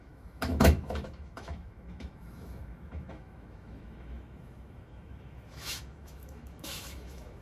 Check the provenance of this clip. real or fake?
fake